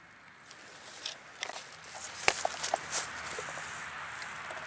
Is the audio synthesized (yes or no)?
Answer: no